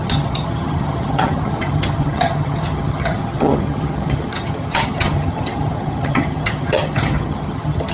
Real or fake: fake